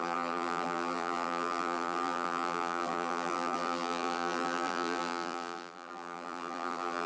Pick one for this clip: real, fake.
fake